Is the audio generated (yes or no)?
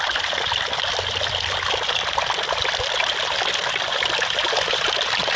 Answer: yes